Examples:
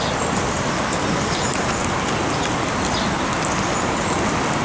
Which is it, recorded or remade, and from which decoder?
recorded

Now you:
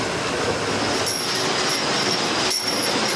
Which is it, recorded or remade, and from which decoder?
recorded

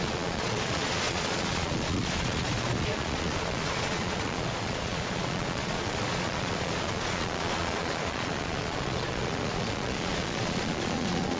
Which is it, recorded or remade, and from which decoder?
remade, vocoder, Vocos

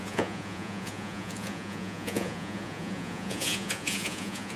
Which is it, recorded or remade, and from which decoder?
remade, vocoder, Vocos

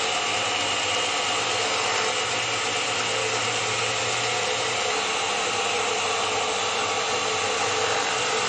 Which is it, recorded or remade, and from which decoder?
recorded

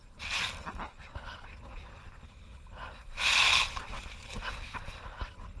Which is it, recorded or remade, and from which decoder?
recorded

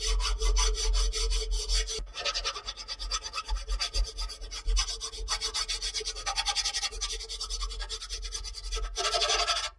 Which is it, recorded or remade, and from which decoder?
recorded